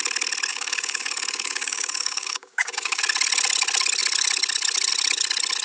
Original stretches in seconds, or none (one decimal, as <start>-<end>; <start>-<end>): 0.0-0.5; 3.0-5.6